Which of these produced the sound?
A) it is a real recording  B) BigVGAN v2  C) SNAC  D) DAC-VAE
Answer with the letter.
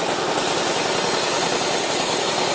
A